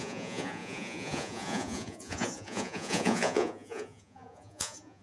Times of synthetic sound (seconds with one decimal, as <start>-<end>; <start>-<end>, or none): 0.0-5.0

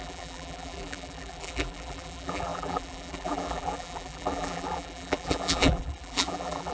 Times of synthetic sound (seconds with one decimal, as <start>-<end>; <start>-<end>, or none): 0.0-6.7

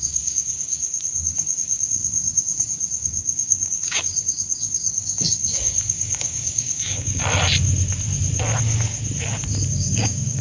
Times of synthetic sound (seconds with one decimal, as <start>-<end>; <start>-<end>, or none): 0.0-7.2; 9.7-10.4